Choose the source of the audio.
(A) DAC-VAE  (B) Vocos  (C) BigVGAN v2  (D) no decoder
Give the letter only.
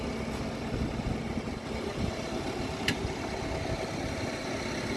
D